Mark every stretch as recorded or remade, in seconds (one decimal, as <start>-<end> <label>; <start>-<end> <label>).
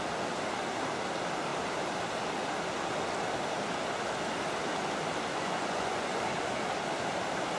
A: 0.0-5.3 recorded; 5.3-6.2 remade; 6.2-7.6 recorded